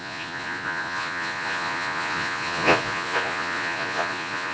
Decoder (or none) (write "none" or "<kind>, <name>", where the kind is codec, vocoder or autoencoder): vocoder, Vocos